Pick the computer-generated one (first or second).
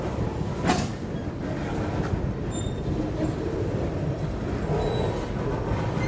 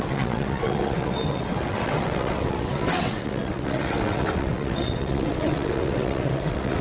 second